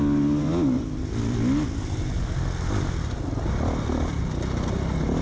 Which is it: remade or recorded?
recorded